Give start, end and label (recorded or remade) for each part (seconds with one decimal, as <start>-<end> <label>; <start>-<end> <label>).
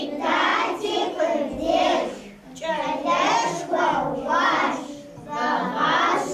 0.0-0.5 recorded; 0.5-1.1 remade; 1.1-3.0 recorded; 3.0-3.8 remade; 3.8-6.3 recorded